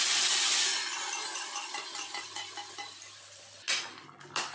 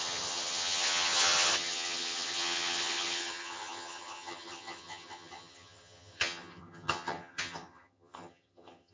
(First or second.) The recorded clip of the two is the first